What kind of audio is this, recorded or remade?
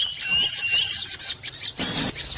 recorded